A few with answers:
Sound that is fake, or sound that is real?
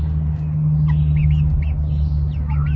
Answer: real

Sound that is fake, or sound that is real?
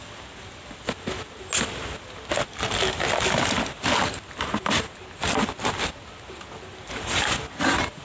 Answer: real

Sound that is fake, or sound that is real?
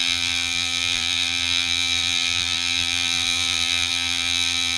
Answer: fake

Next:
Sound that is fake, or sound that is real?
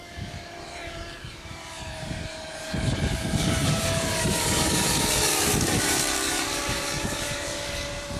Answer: fake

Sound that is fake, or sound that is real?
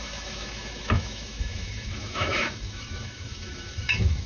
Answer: fake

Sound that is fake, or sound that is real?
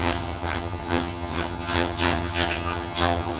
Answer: fake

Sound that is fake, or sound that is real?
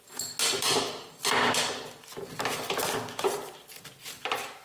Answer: real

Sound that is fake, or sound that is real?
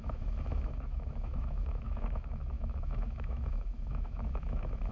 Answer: fake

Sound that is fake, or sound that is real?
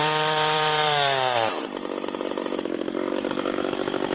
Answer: fake